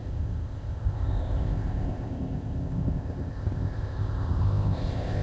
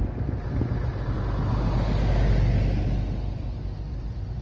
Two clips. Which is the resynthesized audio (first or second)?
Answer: first